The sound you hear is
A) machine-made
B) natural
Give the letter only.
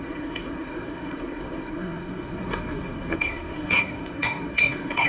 A